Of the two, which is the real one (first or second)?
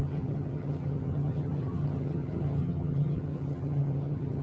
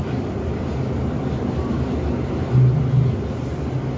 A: second